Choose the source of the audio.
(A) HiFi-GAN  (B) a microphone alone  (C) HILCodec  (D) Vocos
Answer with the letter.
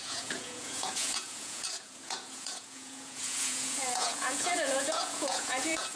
D